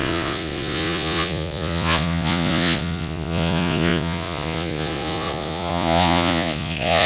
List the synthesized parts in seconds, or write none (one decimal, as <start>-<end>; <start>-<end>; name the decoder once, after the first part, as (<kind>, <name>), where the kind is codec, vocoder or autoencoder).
0.0-7.1 (vocoder, Vocos)

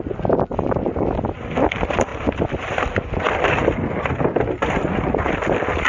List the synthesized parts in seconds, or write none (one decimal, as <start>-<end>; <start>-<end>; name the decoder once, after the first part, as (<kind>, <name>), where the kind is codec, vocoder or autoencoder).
none

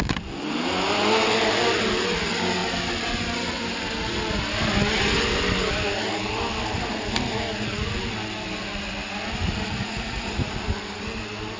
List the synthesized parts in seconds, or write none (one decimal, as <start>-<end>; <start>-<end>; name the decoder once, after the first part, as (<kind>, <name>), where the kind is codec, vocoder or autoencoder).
9.8-10.5 (vocoder, Vocos)

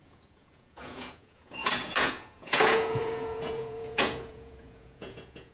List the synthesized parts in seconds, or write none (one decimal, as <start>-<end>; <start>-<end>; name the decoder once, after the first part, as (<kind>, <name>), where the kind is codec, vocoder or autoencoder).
0.0-5.5 (vocoder, Vocos)

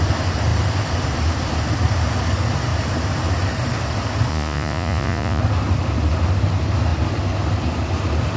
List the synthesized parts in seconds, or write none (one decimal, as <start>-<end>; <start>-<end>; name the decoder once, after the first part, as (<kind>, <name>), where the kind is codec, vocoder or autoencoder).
4.3-5.4 (vocoder, Vocos)